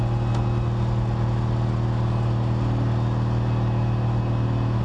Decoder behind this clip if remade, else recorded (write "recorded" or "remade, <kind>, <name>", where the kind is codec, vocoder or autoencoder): recorded